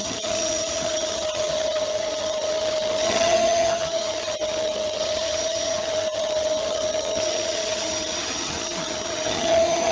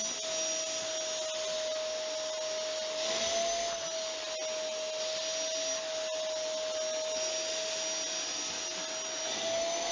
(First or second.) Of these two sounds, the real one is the second